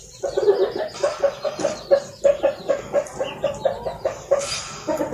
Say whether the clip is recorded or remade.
recorded